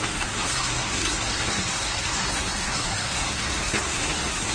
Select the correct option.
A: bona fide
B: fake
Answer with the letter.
B